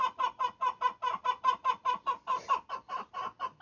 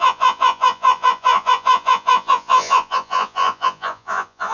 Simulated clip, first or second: second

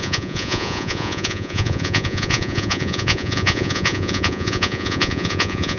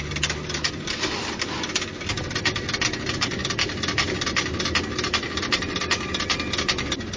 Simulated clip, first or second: first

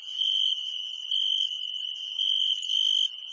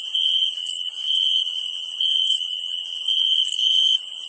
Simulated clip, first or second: second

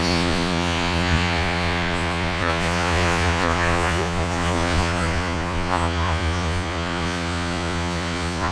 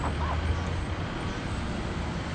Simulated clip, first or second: first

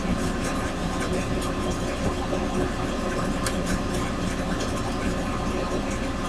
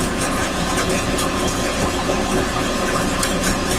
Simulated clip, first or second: second